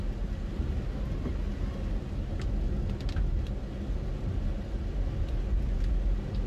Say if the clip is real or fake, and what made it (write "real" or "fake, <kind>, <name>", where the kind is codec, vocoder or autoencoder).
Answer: real